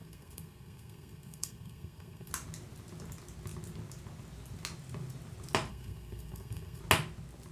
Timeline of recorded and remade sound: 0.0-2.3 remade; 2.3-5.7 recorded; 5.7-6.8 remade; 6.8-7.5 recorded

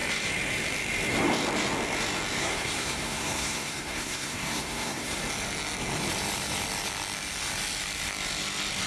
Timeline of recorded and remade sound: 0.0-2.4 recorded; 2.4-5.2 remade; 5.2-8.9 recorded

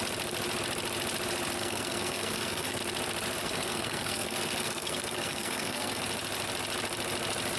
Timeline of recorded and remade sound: 0.0-1.6 recorded; 1.6-2.8 remade; 2.8-3.4 recorded; 3.4-6.0 remade; 6.0-7.6 recorded